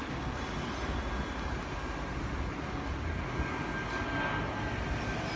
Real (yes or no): yes